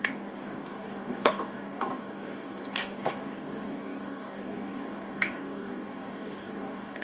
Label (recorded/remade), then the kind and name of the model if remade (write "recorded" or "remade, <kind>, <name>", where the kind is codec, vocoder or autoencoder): remade, codec, DAC